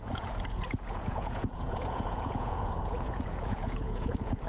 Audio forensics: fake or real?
fake